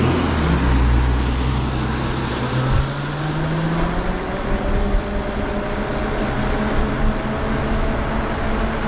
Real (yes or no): yes